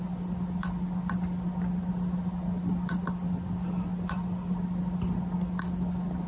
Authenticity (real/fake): real